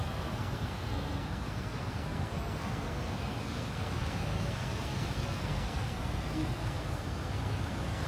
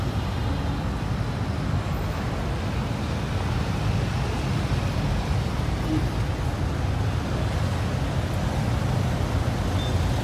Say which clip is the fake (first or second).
first